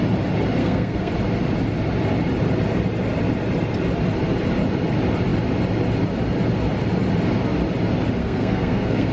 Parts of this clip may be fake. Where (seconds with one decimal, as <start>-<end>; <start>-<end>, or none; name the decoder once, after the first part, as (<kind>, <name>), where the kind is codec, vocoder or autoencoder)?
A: 0.6-1.1 (codec, SNAC); 8.2-9.1